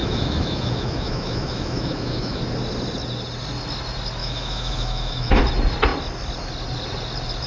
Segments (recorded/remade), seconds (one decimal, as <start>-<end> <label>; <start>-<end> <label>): 0.0-2.4 remade; 2.4-4.2 recorded; 4.2-5.4 remade; 5.4-7.5 recorded